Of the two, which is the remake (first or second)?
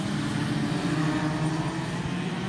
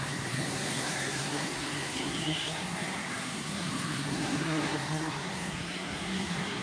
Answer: second